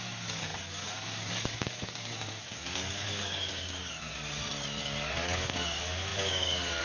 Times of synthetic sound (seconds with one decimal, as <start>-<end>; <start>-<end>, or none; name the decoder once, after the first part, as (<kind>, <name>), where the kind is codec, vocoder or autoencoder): 0.0-4.1 (codec, DAC); 4.8-6.8